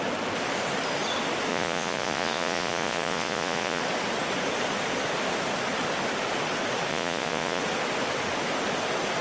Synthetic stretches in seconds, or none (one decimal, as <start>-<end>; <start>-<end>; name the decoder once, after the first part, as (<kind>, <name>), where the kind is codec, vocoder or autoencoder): 1.5-3.8 (vocoder, Vocos); 6.9-7.6